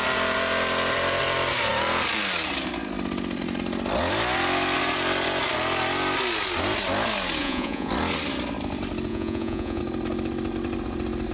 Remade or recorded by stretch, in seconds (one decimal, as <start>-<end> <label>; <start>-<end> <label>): 0.0-7.4 recorded; 7.4-7.9 remade; 7.9-9.1 recorded; 9.1-9.8 remade; 9.8-11.3 recorded